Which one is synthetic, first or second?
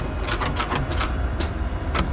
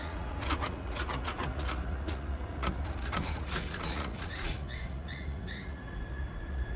second